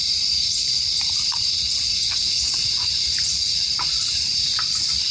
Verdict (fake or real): fake